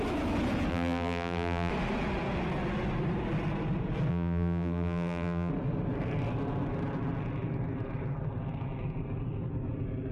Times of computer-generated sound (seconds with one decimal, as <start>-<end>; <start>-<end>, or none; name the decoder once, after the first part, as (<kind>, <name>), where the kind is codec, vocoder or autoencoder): 0.7-1.7 (vocoder, BigVGAN v2); 4.1-5.5